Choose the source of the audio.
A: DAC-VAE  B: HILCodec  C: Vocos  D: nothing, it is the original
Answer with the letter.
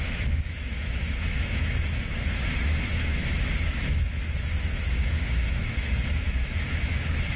A